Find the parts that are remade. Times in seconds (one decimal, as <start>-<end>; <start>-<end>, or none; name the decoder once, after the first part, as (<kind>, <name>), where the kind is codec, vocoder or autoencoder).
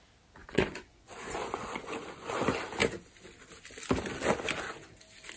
0.4-2.3 (vocoder, Vocos)